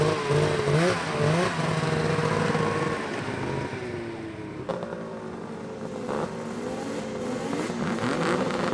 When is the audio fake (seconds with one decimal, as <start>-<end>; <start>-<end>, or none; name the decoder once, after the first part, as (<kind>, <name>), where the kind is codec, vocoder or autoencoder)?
none